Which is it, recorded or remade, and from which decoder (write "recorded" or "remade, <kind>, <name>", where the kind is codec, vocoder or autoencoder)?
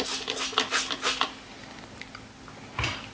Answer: recorded